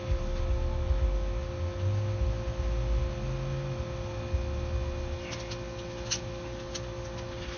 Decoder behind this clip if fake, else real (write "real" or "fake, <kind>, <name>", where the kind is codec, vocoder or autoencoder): real